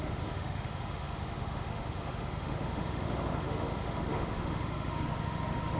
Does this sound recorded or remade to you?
remade